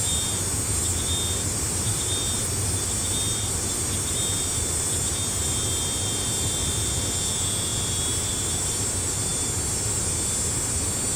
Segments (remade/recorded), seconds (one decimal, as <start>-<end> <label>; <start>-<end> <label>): 0.0-11.2 recorded